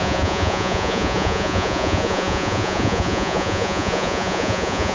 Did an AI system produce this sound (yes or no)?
yes